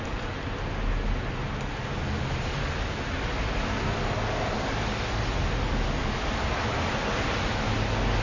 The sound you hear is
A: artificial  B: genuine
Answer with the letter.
B